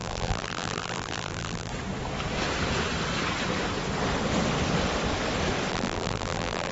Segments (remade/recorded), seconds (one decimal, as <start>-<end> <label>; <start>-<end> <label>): 0.0-1.7 remade; 1.7-5.7 recorded; 5.7-6.7 remade